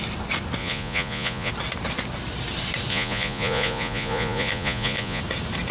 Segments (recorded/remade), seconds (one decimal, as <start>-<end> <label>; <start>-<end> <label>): 0.0-0.6 recorded; 0.6-1.5 remade; 1.5-2.9 recorded; 2.9-5.2 remade; 5.2-5.7 recorded